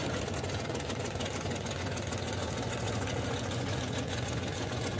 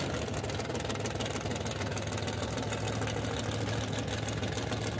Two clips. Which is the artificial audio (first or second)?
first